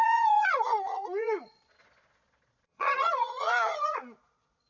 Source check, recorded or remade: remade